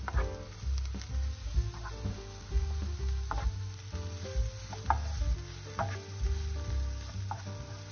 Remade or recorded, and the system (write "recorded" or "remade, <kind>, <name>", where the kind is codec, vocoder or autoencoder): recorded